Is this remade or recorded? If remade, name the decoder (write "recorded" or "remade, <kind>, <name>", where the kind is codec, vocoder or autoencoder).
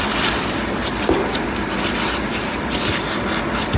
recorded